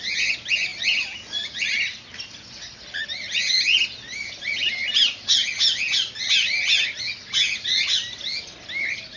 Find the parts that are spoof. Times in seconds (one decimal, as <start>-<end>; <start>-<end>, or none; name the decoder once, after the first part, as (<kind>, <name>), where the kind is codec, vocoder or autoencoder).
none